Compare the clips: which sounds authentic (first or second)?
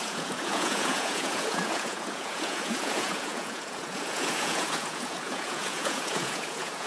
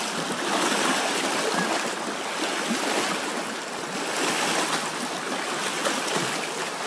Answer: second